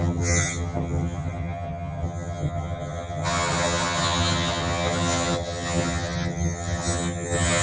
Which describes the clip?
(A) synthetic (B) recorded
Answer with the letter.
A